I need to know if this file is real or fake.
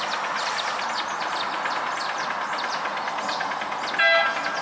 real